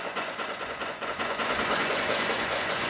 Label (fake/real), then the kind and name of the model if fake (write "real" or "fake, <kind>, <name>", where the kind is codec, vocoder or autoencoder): fake, vocoder, Vocos